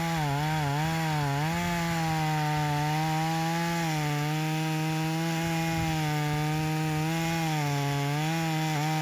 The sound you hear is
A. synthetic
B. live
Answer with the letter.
B